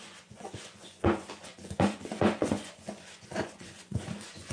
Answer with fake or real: fake